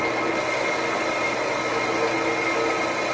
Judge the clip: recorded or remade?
recorded